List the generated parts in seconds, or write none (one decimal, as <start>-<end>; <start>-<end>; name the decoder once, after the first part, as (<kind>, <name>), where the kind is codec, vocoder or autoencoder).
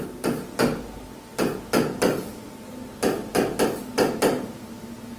none